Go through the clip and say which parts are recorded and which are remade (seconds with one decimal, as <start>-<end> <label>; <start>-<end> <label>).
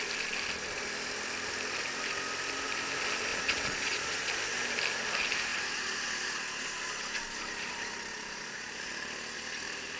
0.0-3.3 recorded; 3.3-4.3 remade; 4.3-8.1 recorded; 8.1-8.9 remade; 8.9-10.0 recorded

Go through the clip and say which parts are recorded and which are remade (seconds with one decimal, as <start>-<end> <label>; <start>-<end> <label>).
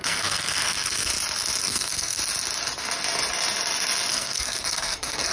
0.0-1.1 remade; 1.1-1.6 recorded; 1.6-2.2 remade; 2.2-4.1 recorded; 4.1-5.3 remade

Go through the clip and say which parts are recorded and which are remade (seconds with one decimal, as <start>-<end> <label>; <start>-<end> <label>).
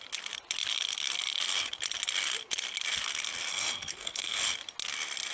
0.0-3.5 recorded; 3.5-4.4 remade; 4.4-5.3 recorded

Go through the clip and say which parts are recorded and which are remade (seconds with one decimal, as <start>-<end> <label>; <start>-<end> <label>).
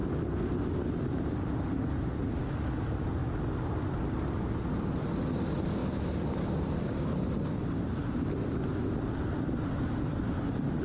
0.0-3.2 recorded; 3.2-3.8 remade; 3.8-5.8 recorded; 5.8-10.8 remade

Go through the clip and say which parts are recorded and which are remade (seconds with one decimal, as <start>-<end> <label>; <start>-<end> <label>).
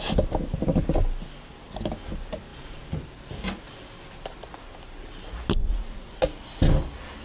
0.0-5.6 recorded; 5.6-6.4 remade; 6.4-7.2 recorded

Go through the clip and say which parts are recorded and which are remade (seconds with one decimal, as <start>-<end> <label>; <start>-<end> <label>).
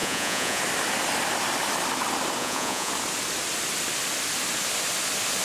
0.0-0.6 remade; 0.6-2.4 recorded; 2.4-2.9 remade; 2.9-5.4 recorded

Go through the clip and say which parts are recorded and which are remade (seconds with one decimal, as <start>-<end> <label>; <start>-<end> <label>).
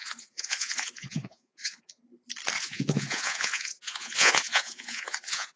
0.0-2.0 remade; 2.0-2.6 recorded; 2.6-5.6 remade